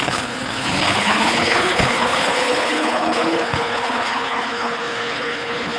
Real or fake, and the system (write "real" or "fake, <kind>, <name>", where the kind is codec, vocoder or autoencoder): fake, codec, HILCodec